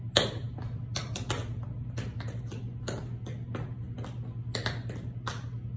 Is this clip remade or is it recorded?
recorded